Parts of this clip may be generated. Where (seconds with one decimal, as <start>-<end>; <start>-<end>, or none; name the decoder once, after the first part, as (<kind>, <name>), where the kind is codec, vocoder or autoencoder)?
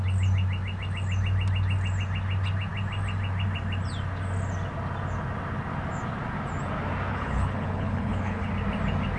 7.1-8.5 (codec, HILCodec)